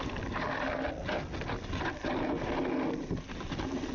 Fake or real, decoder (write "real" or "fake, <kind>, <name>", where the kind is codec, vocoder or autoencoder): real